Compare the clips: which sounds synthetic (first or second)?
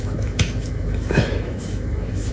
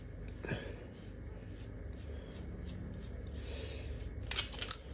first